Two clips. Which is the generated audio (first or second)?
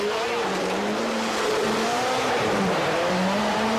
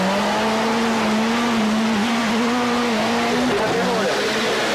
first